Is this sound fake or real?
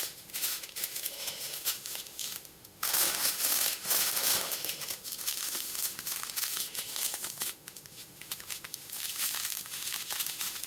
fake